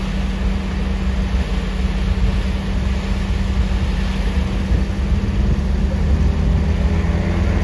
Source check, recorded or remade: recorded